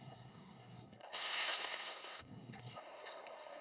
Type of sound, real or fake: fake